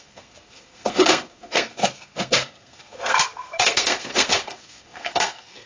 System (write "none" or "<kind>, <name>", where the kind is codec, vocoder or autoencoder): codec, SNAC